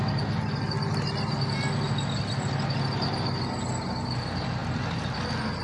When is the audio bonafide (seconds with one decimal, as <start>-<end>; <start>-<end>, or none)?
0.0-5.6

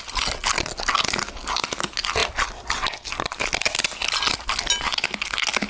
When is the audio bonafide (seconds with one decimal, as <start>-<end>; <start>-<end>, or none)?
0.0-5.7

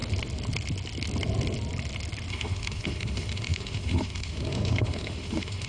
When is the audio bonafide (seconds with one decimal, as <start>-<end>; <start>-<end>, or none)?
0.0-2.3

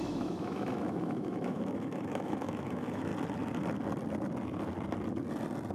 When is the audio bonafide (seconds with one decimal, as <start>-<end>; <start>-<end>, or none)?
3.1-5.7

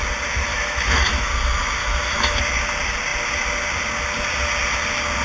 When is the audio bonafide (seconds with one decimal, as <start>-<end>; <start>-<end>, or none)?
0.0-0.5; 1.3-1.8; 2.4-5.2

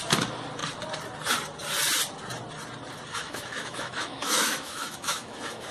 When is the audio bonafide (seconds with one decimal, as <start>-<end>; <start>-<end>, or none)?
0.0-3.1